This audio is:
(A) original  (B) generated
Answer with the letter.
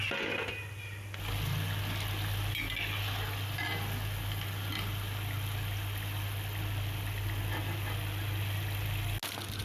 A